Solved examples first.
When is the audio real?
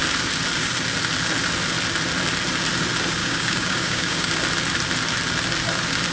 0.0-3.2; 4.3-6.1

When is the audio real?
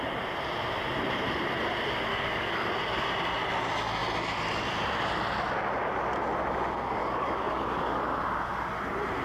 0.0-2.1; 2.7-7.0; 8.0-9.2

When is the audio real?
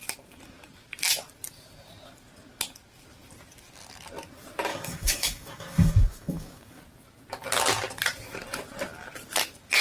0.0-4.7; 6.8-9.8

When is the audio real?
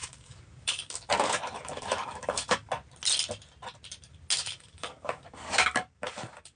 2.7-4.4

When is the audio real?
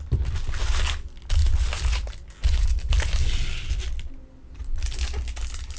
0.0-5.8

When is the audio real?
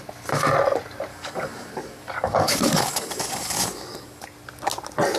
0.0-1.1; 4.2-5.2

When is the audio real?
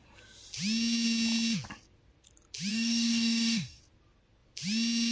0.0-2.7; 3.8-5.1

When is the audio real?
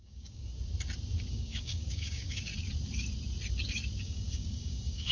0.5-1.3; 2.5-4.0